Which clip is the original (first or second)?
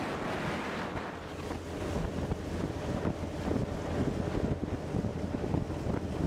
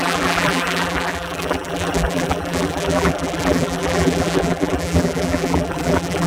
first